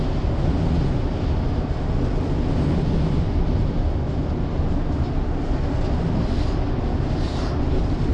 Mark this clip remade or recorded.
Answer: recorded